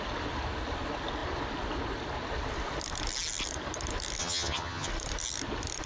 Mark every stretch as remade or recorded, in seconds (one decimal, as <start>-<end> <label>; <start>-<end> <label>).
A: 0.0-4.2 recorded; 4.2-4.9 remade; 4.9-5.9 recorded